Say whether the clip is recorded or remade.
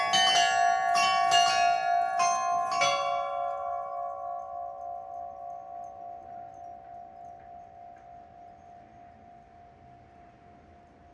recorded